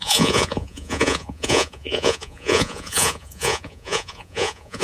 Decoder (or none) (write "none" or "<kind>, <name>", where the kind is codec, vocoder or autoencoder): vocoder, Vocos